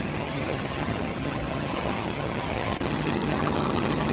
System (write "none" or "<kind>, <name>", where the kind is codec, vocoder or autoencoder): vocoder, HiFi-GAN